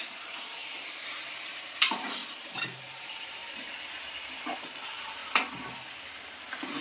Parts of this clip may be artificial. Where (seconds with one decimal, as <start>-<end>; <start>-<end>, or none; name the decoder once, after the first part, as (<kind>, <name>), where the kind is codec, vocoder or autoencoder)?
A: 0.0-2.2 (vocoder, BigVGAN v2); 2.8-5.2; 6.2-6.8